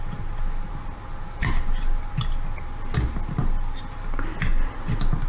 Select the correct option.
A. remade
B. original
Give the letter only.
B